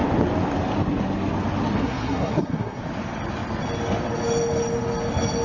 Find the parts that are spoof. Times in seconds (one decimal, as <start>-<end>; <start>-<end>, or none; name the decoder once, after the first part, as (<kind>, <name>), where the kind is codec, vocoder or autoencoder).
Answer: 1.8-2.8 (codec, SNAC)